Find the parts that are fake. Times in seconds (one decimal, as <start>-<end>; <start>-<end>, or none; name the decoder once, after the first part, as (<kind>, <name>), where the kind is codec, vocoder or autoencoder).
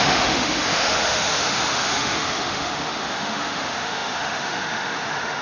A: 0.0-5.4 (autoencoder, DAC-VAE)